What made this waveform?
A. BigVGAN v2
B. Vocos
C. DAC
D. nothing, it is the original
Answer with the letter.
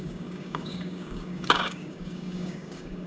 C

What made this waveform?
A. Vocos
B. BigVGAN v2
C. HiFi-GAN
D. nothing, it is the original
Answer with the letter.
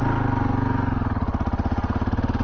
D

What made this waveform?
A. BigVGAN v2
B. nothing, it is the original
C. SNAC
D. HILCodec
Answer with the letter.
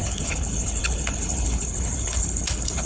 D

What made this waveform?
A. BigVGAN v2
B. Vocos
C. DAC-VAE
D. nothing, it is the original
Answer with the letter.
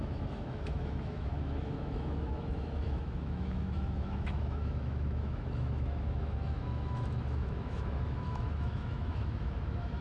C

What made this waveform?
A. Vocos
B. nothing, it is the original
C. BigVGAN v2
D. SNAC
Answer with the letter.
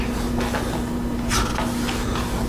B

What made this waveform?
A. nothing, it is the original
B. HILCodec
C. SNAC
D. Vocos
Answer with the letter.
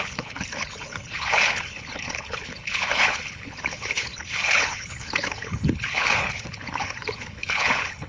B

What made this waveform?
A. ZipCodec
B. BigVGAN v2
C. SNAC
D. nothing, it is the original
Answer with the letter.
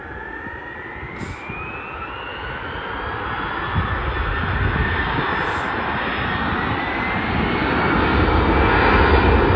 D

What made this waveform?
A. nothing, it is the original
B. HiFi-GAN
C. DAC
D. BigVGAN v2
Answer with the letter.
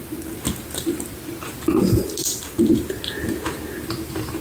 A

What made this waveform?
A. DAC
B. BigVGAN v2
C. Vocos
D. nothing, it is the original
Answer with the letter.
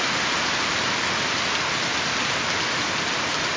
D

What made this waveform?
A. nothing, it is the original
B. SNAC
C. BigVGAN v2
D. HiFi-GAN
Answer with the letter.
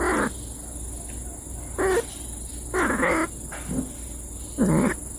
A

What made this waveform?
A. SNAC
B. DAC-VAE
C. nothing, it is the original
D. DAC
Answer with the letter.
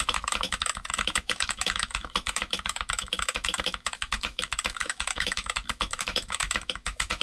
B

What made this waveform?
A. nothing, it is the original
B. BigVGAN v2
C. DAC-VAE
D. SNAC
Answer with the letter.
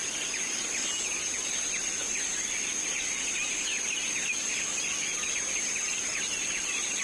A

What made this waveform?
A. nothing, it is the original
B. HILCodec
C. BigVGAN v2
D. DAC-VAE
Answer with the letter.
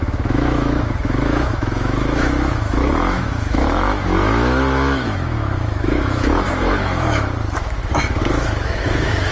D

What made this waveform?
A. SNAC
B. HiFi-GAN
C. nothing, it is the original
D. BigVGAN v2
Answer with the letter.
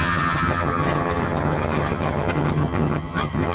B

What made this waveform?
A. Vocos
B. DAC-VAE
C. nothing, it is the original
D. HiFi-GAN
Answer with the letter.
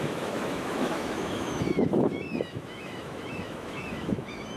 B